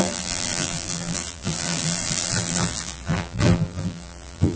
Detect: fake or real fake